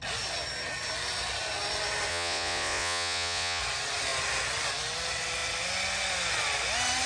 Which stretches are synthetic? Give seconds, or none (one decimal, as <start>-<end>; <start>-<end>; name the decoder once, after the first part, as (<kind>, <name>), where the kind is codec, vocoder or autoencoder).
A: 2.1-3.6 (vocoder, Vocos)